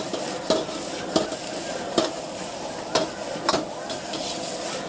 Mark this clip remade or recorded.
recorded